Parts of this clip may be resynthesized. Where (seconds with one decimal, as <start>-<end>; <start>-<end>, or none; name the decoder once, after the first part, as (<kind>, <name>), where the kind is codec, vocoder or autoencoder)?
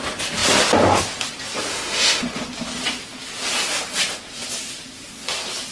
1.7-2.2 (autoencoder, DAC-VAE)